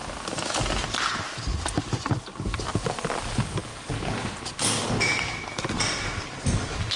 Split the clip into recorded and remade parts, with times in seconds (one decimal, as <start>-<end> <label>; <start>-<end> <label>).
0.0-7.0 recorded